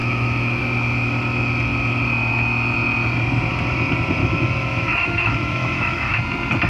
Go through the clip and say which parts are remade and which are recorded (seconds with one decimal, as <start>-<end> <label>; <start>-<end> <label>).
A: 0.0-0.6 remade; 0.6-4.2 recorded; 4.2-6.2 remade; 6.2-6.7 recorded